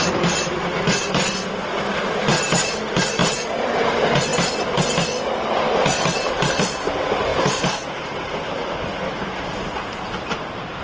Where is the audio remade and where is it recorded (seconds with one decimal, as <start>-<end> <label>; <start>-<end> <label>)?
0.0-7.3 recorded; 7.3-9.4 remade; 9.4-10.8 recorded